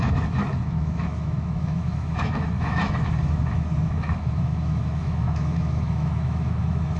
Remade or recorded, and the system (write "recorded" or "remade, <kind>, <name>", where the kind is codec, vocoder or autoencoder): remade, autoencoder, DAC-VAE